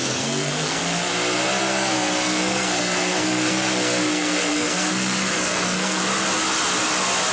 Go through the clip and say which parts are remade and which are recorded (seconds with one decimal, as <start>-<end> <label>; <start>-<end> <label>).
0.0-1.1 remade; 1.1-1.6 recorded; 1.6-6.0 remade; 6.0-7.3 recorded

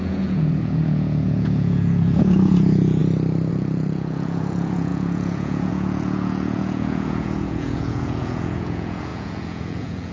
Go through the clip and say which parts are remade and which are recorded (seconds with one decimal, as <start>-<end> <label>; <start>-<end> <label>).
0.0-3.0 remade; 3.0-3.5 recorded; 3.5-10.1 remade